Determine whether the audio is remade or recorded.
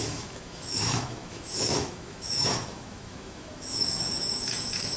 remade